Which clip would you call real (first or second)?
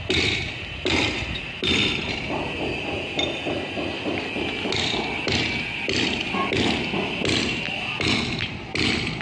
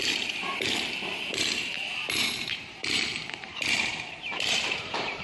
first